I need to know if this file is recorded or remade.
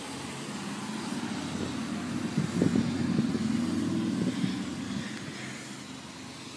recorded